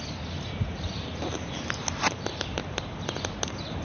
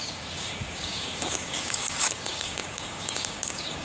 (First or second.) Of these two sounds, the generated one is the second